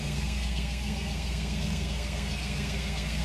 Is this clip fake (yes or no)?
yes